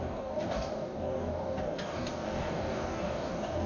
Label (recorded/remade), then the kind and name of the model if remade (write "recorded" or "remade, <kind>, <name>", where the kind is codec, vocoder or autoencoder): remade, codec, DAC